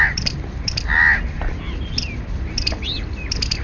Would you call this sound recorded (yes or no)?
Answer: yes